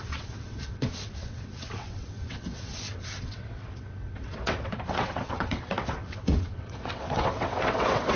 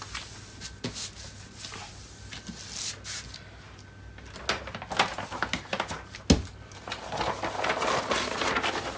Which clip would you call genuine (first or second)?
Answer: second